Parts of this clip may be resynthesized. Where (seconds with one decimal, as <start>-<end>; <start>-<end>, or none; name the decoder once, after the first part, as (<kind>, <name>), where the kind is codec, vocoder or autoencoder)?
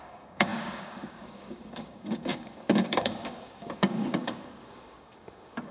0.0-5.7 (codec, DAC)